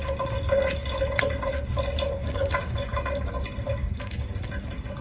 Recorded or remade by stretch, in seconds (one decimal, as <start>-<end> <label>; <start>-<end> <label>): 0.0-2.2 recorded; 2.2-3.3 remade; 3.3-3.8 recorded; 3.8-4.3 remade; 4.3-5.0 recorded